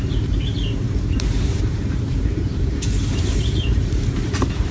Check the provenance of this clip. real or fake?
fake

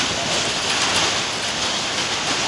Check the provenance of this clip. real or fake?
real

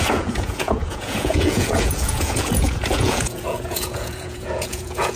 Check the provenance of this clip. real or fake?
fake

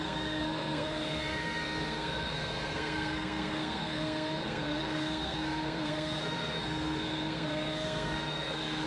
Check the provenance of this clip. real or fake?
fake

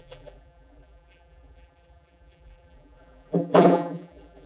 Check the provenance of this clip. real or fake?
fake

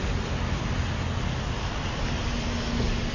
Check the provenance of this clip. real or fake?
real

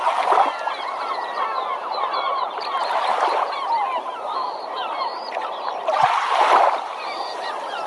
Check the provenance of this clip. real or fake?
fake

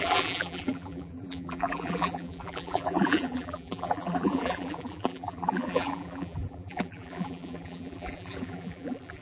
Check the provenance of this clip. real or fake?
fake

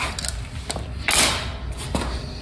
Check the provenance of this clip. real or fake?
real